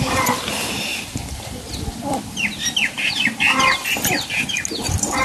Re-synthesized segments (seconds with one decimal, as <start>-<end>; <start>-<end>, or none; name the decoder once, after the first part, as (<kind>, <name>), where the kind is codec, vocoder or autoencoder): none